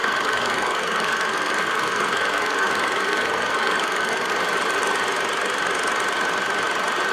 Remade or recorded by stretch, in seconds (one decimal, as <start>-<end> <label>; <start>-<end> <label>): 0.0-4.3 remade; 4.3-7.1 recorded